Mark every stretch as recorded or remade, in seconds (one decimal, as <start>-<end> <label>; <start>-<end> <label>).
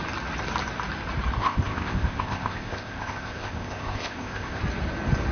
0.0-1.4 recorded; 1.4-4.6 remade; 4.6-5.3 recorded